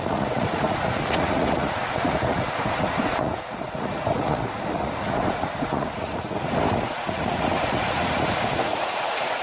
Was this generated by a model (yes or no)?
yes